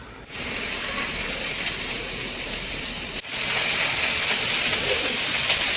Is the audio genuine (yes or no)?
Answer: yes